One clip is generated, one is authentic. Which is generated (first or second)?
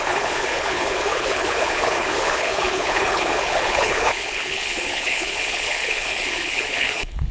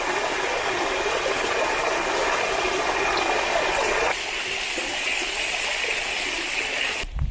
first